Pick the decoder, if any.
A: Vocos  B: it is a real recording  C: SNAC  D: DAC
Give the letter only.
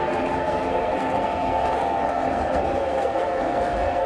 C